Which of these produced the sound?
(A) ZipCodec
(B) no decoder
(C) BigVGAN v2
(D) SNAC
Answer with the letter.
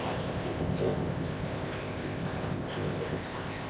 A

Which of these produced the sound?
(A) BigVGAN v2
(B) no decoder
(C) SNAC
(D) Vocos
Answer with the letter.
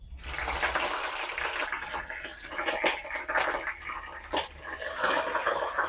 B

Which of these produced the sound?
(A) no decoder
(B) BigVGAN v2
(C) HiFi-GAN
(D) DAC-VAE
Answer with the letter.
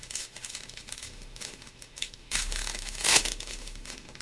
D